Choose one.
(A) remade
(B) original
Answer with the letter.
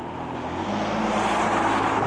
B